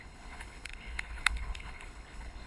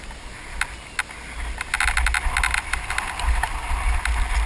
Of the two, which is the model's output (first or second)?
first